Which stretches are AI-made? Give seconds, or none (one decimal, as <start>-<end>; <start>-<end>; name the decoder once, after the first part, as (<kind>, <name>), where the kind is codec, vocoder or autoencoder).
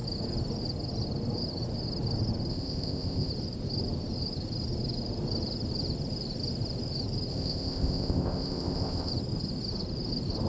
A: 2.5-3.3 (codec, ZipCodec); 7.3-9.1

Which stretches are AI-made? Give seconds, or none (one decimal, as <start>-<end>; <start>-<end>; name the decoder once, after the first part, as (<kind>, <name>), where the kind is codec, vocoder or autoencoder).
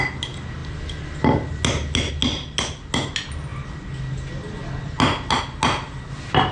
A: none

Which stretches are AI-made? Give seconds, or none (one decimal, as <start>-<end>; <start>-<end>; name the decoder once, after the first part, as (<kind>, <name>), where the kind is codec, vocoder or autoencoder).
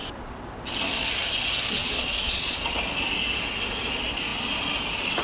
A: 1.8-2.8 (vocoder, Vocos)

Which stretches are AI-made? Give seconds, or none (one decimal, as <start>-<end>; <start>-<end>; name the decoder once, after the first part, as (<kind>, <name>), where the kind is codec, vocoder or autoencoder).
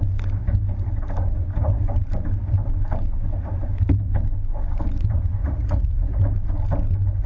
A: 5.4-6.1 (vocoder, Vocos)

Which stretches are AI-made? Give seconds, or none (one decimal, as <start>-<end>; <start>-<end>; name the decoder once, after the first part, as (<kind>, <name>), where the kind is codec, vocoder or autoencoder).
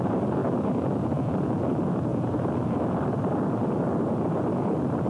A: none